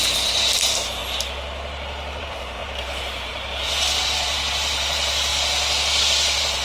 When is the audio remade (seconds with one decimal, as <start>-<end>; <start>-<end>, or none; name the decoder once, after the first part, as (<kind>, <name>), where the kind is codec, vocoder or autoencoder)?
0.0-1.0 (vocoder, BigVGAN v2); 2.2-5.3; 6.0-6.6